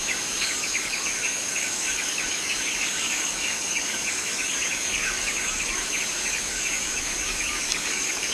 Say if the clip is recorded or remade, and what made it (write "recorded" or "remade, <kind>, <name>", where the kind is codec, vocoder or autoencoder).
remade, codec, DAC